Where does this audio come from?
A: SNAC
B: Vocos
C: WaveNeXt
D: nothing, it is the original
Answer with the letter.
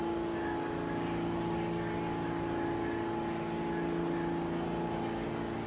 D